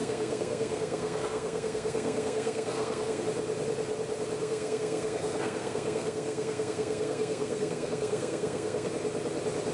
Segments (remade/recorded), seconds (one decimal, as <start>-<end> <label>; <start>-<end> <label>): 0.0-3.2 remade; 3.2-4.4 recorded; 4.4-8.9 remade; 8.9-9.7 recorded